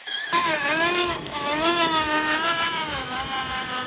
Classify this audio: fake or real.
fake